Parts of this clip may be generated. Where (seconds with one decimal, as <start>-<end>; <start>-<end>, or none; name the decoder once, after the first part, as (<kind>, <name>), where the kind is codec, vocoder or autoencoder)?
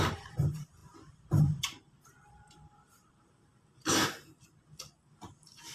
0.0-3.5 (vocoder, BigVGAN v2); 5.1-5.7